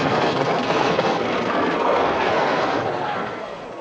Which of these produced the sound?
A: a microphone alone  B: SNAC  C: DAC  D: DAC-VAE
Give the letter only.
B